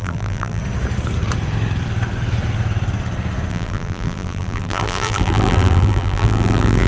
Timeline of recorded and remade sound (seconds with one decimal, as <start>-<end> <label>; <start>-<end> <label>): 0.0-0.6 remade; 0.6-3.5 recorded; 3.5-6.9 remade